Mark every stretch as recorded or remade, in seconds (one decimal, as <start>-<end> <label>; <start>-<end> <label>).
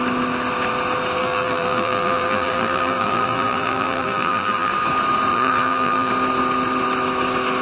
0.0-1.2 recorded; 1.2-4.7 remade; 4.7-5.3 recorded; 5.3-6.1 remade; 6.1-7.6 recorded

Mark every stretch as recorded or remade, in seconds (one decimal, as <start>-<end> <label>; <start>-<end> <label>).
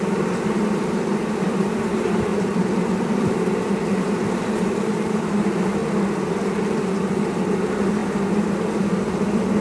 0.0-5.8 remade; 5.8-7.5 recorded; 7.5-8.0 remade; 8.0-9.6 recorded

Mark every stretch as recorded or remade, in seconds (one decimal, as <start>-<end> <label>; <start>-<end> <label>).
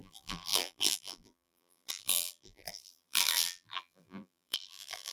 0.0-5.1 remade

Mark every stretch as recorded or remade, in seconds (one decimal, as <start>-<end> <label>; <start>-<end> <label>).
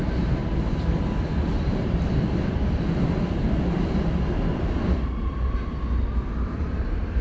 0.0-0.4 remade; 0.4-4.6 recorded; 4.6-7.2 remade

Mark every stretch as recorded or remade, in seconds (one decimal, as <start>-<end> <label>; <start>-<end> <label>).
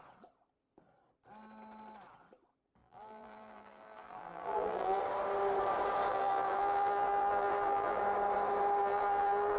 0.0-2.8 recorded; 2.8-5.0 remade; 5.0-6.1 recorded; 6.1-8.0 remade; 8.0-8.8 recorded; 8.8-9.6 remade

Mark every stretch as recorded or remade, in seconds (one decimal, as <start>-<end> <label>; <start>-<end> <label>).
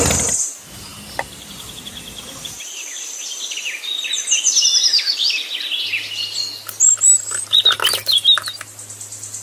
0.0-0.9 recorded; 0.9-4.6 remade; 4.6-9.4 recorded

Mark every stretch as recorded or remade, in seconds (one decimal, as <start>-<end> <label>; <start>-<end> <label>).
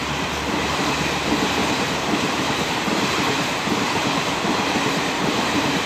0.0-1.6 recorded; 1.6-3.9 remade; 3.9-5.9 recorded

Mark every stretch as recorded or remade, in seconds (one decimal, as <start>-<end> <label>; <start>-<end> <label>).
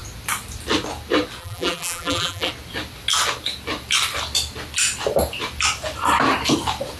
0.0-1.4 recorded; 1.4-2.5 remade; 2.5-7.0 recorded